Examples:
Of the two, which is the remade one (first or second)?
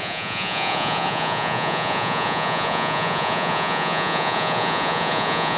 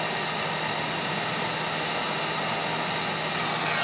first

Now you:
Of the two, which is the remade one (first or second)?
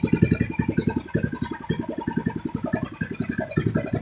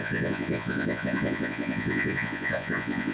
second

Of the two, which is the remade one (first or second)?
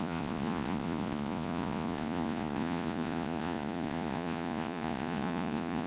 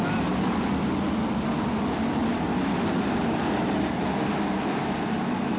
first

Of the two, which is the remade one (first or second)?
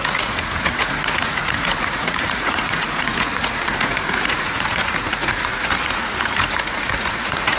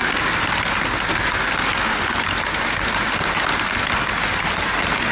first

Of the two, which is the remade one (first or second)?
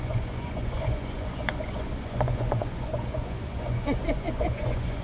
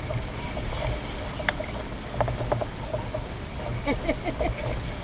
first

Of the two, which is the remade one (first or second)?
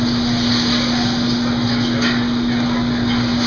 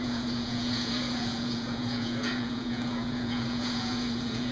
second